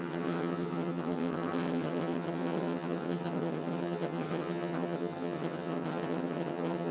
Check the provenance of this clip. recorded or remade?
remade